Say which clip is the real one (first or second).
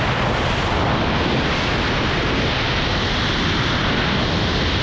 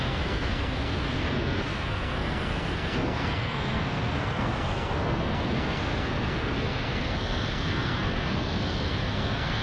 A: first